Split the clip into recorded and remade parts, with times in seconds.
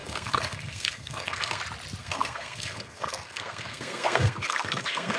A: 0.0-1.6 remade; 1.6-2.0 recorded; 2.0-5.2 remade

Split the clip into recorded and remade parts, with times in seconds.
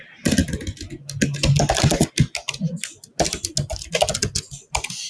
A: 0.0-5.1 recorded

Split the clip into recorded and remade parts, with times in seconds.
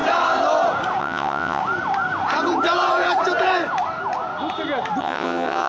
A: 0.0-1.0 recorded; 1.0-1.6 remade; 1.6-5.0 recorded; 5.0-5.7 remade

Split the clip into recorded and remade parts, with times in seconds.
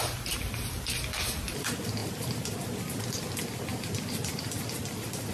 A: 0.0-5.3 recorded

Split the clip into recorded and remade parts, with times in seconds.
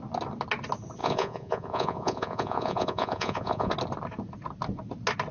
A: 0.0-1.0 recorded; 1.0-3.7 remade; 3.7-5.3 recorded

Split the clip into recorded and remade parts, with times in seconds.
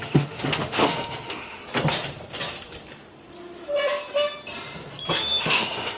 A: 0.0-1.6 remade; 1.6-5.1 recorded; 5.1-6.0 remade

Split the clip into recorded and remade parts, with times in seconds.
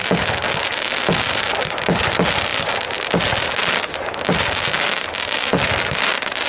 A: 0.0-6.5 recorded